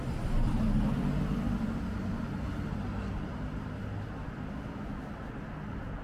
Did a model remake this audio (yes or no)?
no